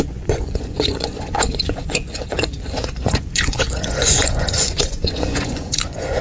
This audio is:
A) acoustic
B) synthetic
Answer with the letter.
B